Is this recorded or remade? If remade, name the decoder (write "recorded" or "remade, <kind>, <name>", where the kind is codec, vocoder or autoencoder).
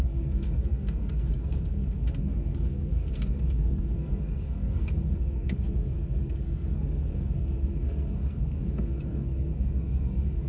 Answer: remade, codec, SNAC